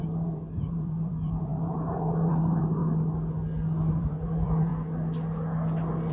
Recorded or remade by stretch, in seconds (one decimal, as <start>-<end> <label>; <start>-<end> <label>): 0.0-2.8 remade; 2.8-3.9 recorded; 3.9-4.7 remade; 4.7-6.1 recorded